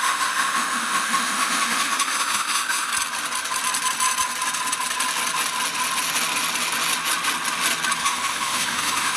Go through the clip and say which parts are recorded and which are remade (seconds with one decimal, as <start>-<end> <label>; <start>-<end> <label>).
0.0-2.9 remade; 2.9-8.0 recorded; 8.0-9.2 remade